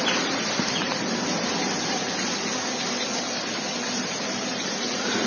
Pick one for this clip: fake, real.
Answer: real